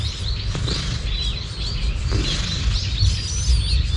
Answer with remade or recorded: recorded